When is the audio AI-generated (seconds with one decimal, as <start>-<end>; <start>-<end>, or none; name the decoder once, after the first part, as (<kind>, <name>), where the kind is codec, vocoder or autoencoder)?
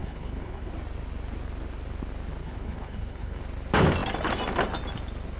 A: 0.0-0.7 (codec, HILCodec); 2.4-3.4